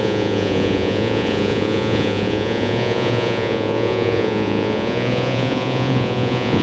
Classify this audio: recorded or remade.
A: remade